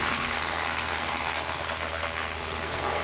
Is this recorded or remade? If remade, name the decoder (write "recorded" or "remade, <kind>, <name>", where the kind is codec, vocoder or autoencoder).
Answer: remade, codec, SNAC